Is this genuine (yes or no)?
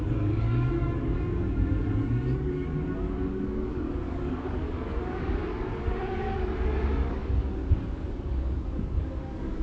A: no